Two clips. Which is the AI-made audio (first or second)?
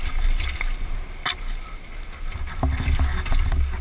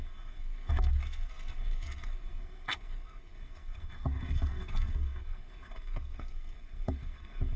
second